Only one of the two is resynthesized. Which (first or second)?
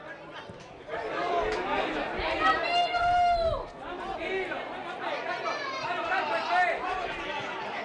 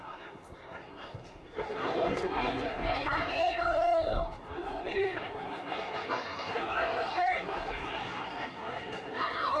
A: second